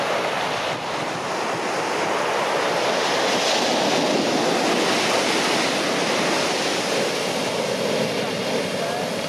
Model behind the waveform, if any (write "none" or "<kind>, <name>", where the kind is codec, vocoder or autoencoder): none